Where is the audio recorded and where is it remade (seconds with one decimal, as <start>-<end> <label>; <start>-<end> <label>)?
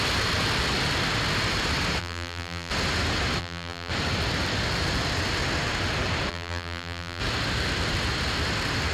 0.0-2.0 recorded; 2.0-2.7 remade; 2.7-3.4 recorded; 3.4-3.9 remade; 3.9-6.3 recorded; 6.3-7.2 remade; 7.2-8.9 recorded